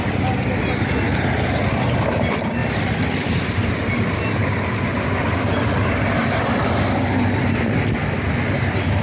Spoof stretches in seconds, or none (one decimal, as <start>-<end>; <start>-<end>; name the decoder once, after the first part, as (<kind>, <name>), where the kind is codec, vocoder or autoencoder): none